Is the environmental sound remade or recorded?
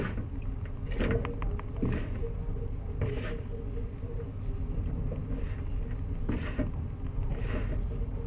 recorded